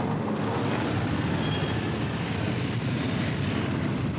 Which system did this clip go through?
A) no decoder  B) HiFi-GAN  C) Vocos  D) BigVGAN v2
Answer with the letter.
A